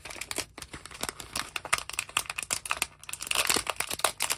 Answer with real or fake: real